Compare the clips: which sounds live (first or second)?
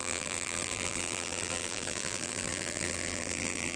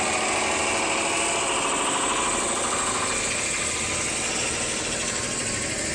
second